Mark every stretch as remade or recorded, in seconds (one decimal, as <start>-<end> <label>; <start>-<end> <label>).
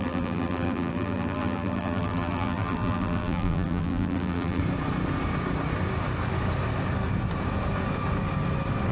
0.0-4.6 remade; 4.6-8.9 recorded